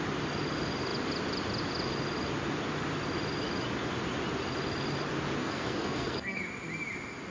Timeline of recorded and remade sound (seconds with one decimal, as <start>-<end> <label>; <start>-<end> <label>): 0.0-5.4 recorded; 5.4-6.4 remade; 6.4-7.3 recorded